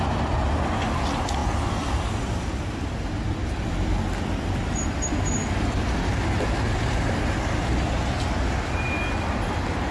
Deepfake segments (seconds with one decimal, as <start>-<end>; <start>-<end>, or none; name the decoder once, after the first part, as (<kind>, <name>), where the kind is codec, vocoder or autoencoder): none